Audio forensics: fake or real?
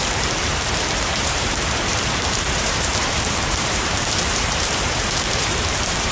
fake